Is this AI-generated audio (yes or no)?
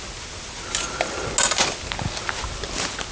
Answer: no